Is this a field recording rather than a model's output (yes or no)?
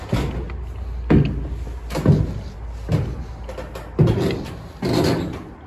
yes